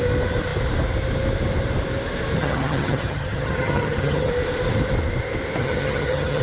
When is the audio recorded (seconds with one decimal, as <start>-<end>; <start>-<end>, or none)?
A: 0.0-2.4; 4.3-5.6